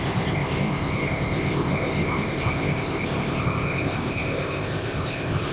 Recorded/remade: remade